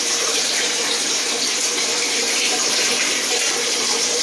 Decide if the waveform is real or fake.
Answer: fake